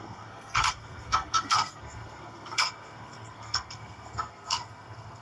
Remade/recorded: remade